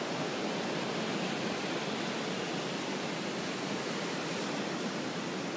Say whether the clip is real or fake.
real